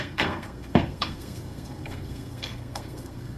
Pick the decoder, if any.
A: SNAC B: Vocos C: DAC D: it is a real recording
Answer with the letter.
A